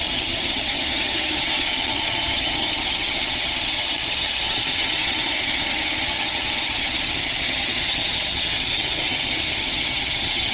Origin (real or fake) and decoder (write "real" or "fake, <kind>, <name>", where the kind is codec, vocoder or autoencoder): fake, vocoder, HiFi-GAN